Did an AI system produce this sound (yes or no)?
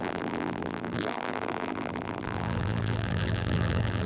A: yes